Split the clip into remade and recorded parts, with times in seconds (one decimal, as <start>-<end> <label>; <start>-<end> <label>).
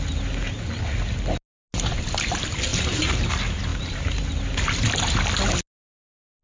0.0-2.7 recorded; 2.7-3.3 remade; 3.3-3.7 recorded; 3.7-4.3 remade; 4.3-6.4 recorded